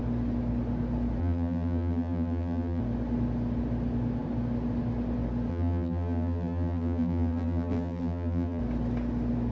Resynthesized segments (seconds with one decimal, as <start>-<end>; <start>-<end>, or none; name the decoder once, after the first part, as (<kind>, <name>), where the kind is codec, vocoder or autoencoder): 1.2-2.8 (vocoder, BigVGAN v2); 5.5-8.6